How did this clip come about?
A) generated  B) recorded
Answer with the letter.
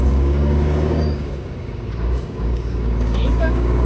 A